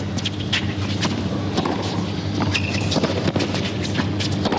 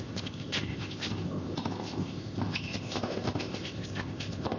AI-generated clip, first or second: second